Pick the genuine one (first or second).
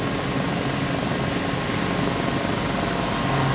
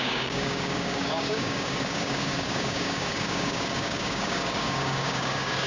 first